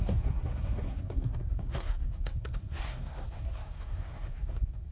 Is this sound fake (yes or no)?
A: yes